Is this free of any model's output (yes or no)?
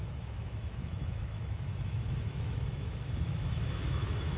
no